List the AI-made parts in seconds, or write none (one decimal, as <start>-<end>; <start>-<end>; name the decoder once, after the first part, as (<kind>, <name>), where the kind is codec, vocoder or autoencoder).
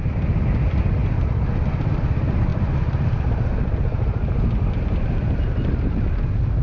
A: 0.0-1.0 (vocoder, BigVGAN v2); 1.9-2.5